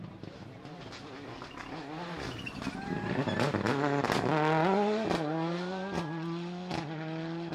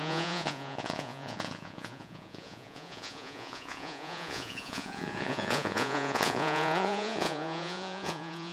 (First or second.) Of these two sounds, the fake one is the second